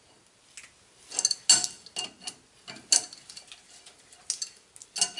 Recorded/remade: recorded